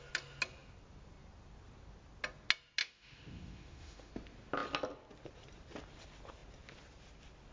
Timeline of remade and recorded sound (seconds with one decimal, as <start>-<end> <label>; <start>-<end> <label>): 0.0-2.8 recorded; 2.8-4.1 remade; 4.1-7.5 recorded